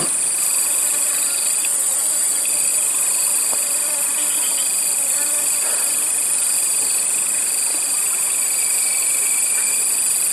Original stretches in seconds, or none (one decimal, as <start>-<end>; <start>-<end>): 0.0-1.7; 2.7-3.8; 7.1-10.3